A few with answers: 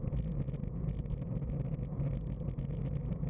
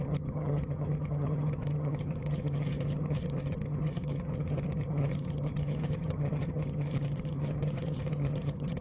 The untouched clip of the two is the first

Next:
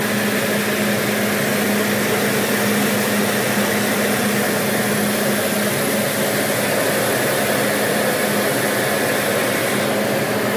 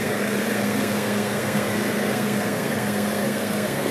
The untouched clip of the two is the first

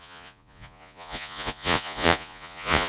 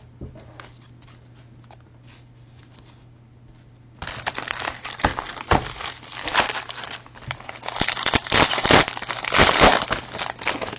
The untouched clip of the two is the second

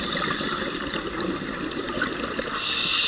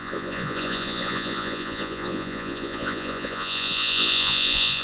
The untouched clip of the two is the first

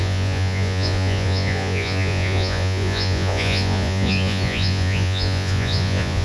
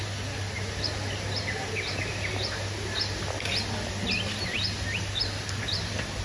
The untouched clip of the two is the second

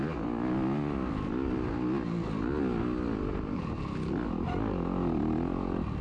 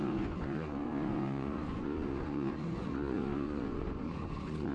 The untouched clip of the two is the first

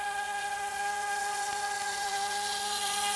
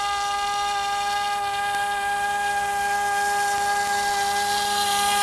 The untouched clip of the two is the second